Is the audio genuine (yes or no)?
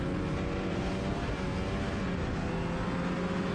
yes